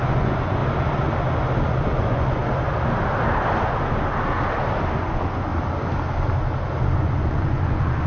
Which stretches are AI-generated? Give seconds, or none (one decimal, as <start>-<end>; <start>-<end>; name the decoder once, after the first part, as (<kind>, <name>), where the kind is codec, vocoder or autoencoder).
0.0-0.6 (vocoder, Vocos); 1.6-2.4; 5.0-5.5; 6.8-8.1